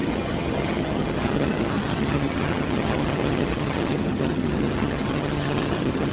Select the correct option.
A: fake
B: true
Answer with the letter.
A